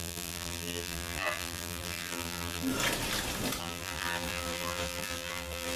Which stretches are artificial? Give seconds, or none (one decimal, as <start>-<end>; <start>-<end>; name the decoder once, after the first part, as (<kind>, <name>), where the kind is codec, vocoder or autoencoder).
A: 0.0-2.7 (vocoder, BigVGAN v2); 3.6-5.8

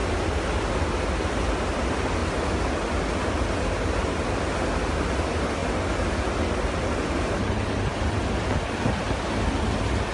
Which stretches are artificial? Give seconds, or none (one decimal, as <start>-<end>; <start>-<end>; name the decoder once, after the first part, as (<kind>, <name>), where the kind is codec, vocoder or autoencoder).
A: none

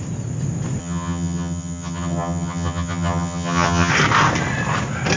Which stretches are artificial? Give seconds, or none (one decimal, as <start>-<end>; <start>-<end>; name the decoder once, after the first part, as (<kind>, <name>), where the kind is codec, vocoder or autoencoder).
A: 0.8-3.9 (vocoder, HiFi-GAN)